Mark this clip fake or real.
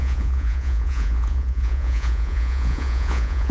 fake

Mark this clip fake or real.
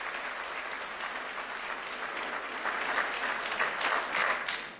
real